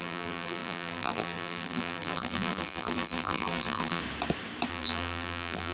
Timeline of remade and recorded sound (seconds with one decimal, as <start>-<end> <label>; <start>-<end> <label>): 0.0-4.0 remade; 4.0-4.7 recorded; 4.7-5.7 remade

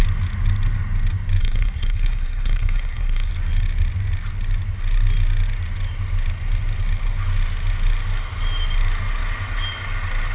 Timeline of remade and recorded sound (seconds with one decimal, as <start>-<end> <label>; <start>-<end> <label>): 0.0-1.4 recorded; 1.4-3.3 remade; 3.3-10.3 recorded

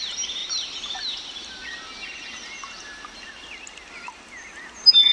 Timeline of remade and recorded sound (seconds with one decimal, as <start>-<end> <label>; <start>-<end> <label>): 0.0-5.1 recorded

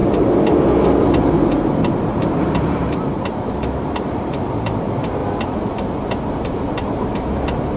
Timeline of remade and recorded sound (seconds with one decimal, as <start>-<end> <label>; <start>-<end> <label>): 0.0-1.0 recorded; 1.0-5.2 remade; 5.2-6.4 recorded; 6.4-7.8 remade

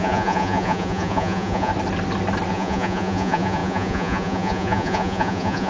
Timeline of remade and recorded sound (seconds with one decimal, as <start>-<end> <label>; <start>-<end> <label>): 0.0-1.7 remade; 1.7-2.5 recorded; 2.5-5.7 remade

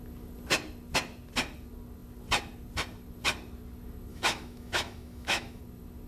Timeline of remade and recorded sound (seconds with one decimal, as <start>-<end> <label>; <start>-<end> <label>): 0.0-4.1 recorded; 4.1-5.6 remade; 5.6-6.1 recorded

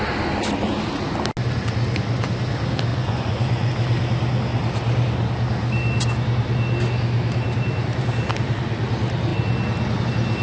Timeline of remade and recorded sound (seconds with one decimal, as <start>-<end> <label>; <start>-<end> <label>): 0.0-2.9 recorded; 2.9-3.7 remade; 3.7-10.4 recorded

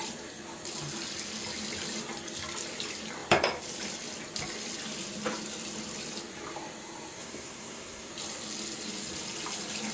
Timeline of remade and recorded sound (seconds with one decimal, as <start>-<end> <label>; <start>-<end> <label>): 0.0-7.2 recorded; 7.2-8.1 remade; 8.1-9.9 recorded